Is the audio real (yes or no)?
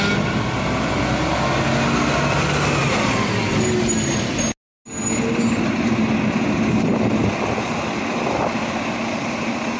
yes